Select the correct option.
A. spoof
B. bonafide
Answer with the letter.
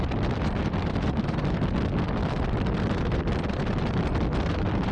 A